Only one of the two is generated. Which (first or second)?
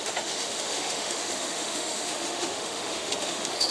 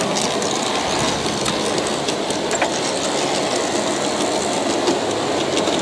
first